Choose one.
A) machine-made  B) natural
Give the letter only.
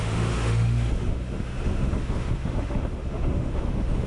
A